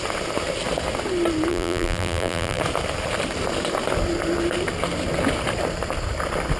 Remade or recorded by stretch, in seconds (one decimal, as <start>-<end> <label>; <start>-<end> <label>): 0.0-1.5 recorded; 1.5-2.6 remade; 2.6-6.6 recorded